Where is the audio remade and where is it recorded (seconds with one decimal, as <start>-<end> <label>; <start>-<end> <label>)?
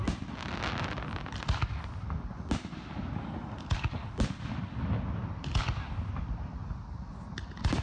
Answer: 0.0-7.8 recorded